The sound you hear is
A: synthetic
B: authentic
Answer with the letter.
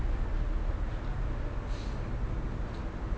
B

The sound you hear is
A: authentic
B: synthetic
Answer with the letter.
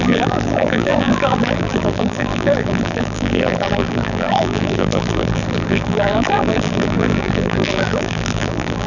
B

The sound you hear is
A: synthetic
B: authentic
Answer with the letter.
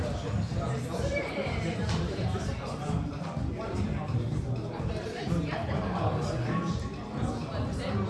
A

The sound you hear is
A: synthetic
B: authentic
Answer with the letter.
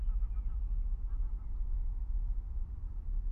B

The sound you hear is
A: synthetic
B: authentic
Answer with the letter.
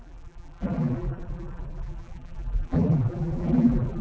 A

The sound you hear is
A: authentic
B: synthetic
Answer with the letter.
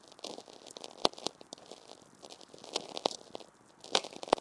A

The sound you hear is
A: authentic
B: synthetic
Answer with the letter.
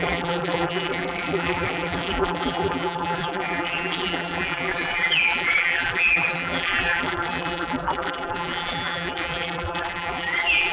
B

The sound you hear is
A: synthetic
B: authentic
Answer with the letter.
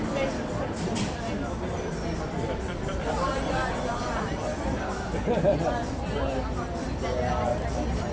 B